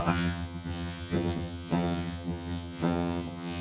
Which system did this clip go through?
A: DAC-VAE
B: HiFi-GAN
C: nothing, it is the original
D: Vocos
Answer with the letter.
B